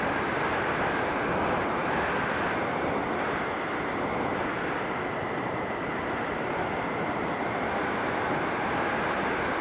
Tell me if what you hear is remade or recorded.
recorded